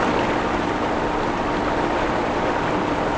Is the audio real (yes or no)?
yes